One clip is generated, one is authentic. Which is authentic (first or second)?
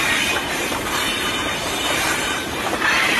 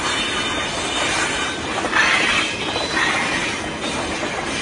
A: second